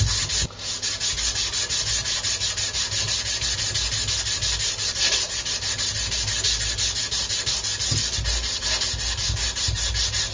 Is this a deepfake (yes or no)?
no